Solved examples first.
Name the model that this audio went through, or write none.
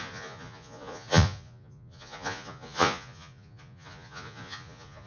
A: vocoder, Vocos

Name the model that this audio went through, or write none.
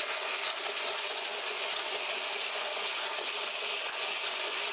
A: vocoder, Vocos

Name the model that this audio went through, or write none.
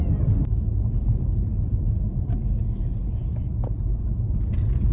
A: none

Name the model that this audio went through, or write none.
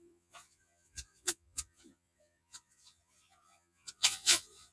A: vocoder, Vocos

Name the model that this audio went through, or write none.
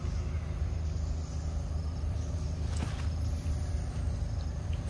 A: none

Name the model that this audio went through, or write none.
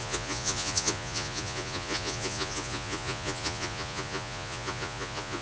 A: vocoder, Vocos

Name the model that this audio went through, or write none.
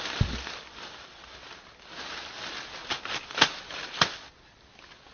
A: none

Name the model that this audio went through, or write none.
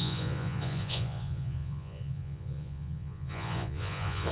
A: vocoder, Vocos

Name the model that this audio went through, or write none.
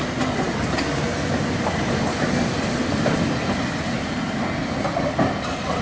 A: none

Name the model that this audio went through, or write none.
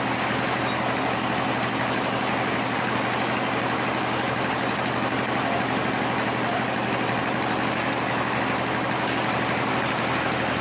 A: none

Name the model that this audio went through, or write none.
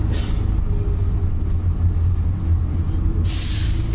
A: none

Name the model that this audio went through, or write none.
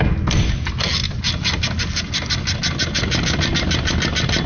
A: none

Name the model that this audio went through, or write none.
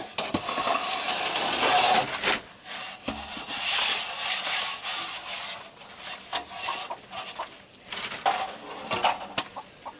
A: none